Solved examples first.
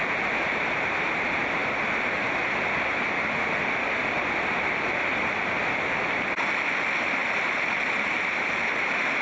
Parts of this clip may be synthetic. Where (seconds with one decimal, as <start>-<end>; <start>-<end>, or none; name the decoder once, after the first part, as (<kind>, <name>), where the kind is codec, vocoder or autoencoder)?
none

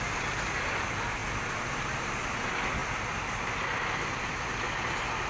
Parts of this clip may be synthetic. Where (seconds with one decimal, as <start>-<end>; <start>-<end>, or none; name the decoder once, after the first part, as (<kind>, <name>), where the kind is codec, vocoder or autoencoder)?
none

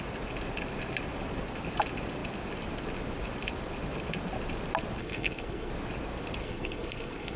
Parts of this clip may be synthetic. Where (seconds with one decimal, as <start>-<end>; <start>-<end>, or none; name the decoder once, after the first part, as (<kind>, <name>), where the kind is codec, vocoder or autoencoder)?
5.0-5.7 (codec, SNAC); 6.4-7.4

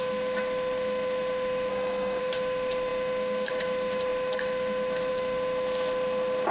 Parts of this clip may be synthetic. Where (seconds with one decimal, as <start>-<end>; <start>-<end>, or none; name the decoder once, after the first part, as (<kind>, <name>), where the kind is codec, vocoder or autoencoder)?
0.0-1.7 (autoencoder, DAC-VAE); 2.2-6.5

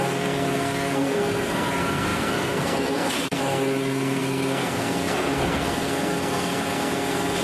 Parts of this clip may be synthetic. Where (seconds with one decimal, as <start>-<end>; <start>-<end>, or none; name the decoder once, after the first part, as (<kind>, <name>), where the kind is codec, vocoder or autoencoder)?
0.0-7.4 (codec, SNAC)

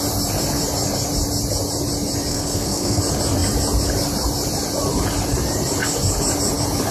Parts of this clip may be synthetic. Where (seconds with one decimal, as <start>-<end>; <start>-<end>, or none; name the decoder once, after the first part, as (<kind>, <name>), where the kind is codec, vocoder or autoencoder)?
2.3-3.0 (codec, SNAC)

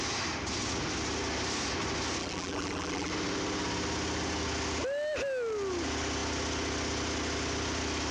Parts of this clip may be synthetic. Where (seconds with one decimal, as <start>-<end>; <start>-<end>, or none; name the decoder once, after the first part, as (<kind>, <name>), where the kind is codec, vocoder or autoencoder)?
2.2-3.1 (vocoder, BigVGAN v2)